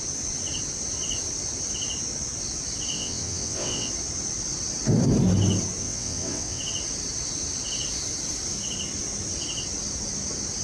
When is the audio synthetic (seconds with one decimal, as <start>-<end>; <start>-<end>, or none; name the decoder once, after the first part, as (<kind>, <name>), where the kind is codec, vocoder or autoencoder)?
2.9-3.9 (vocoder, WaveNeXt); 5.8-6.6